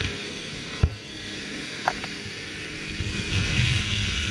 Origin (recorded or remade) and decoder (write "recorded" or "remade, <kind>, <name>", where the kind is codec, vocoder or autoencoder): remade, codec, SNAC